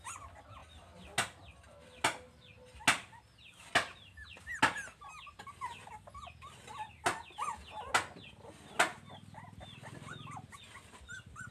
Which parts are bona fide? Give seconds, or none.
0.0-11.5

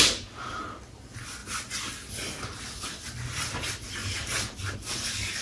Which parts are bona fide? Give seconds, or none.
0.0-5.4